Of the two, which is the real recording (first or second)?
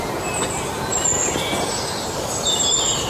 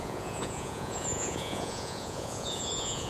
first